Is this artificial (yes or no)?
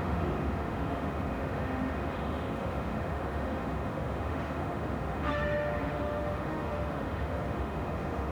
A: yes